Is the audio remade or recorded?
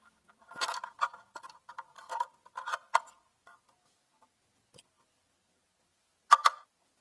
recorded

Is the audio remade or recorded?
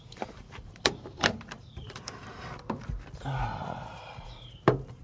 remade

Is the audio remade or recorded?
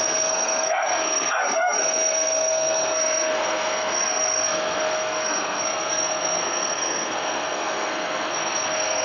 remade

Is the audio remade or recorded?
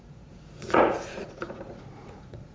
remade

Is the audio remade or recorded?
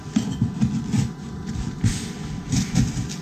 recorded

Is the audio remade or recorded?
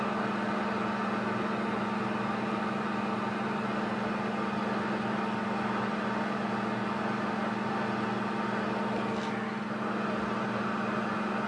recorded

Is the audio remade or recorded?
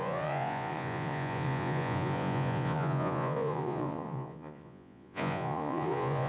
remade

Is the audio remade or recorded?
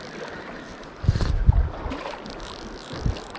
recorded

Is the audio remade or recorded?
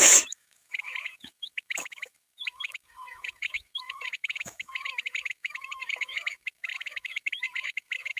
remade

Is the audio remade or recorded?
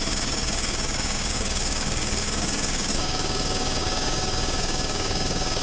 remade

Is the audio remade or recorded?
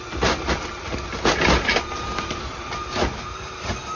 recorded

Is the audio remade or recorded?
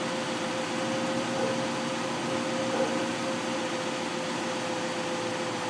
recorded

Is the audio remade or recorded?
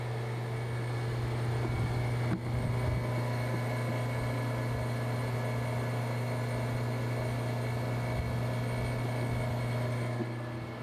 recorded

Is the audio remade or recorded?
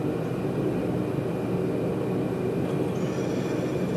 recorded